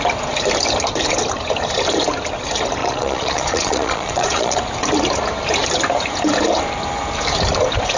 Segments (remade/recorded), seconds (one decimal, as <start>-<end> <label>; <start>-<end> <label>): 0.0-2.8 recorded; 2.8-4.6 remade; 4.6-8.0 recorded